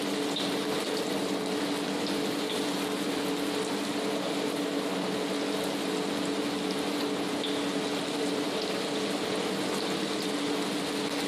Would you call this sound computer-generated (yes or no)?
no